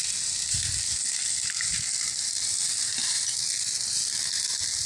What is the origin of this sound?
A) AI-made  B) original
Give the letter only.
B